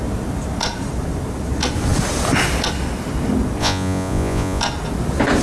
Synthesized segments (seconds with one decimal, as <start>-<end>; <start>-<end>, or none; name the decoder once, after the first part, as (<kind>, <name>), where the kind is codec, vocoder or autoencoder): 3.6-4.6 (vocoder, Vocos)

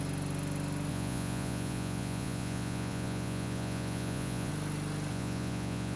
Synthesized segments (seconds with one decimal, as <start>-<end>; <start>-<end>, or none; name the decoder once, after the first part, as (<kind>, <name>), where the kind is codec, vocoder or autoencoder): 0.9-4.5 (vocoder, Vocos); 5.1-6.0

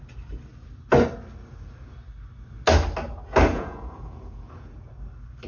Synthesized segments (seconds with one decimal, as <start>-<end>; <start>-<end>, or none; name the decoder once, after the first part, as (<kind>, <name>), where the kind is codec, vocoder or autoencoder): 3.5-4.9 (vocoder, Vocos)

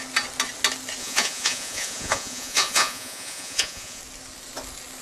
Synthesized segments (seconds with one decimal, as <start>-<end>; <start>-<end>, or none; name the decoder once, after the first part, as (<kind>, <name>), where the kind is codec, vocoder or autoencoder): 1.0-4.0 (vocoder, Vocos)

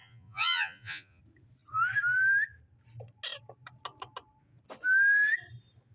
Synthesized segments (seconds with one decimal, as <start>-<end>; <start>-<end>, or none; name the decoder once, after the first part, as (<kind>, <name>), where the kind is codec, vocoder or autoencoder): 0.0-1.2 (vocoder, Vocos)

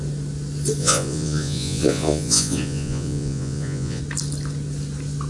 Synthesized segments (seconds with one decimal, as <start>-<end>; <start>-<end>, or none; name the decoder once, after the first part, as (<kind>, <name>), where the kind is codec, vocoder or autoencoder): 0.8-4.0 (vocoder, Vocos)

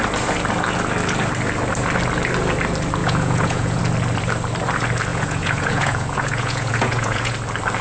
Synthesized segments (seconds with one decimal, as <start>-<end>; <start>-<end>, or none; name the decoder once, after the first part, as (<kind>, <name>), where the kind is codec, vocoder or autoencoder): 3.0-3.8 (vocoder, Vocos); 5.1-7.3

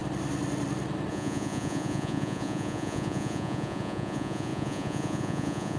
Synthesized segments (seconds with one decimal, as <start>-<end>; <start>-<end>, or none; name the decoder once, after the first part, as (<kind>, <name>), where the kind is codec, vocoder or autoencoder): 1.1-5.8 (vocoder, Vocos)